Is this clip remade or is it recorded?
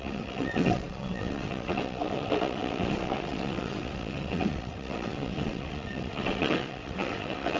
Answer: remade